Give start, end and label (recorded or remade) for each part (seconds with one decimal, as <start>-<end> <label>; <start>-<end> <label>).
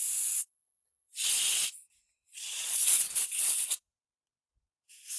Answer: 0.0-0.4 recorded; 0.4-1.3 remade; 1.3-2.3 recorded; 2.3-3.1 remade; 3.1-5.2 recorded